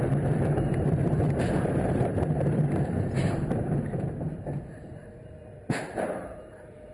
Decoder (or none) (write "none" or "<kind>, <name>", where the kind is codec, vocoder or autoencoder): vocoder, BigVGAN v2